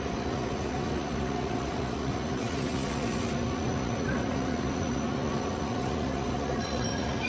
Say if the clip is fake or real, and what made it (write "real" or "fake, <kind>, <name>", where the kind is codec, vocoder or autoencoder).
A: fake, vocoder, Vocos